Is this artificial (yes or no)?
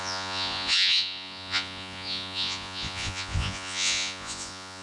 yes